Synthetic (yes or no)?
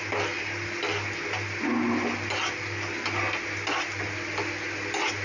no